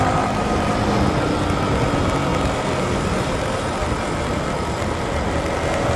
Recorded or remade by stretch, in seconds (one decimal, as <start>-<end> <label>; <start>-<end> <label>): 0.0-6.0 recorded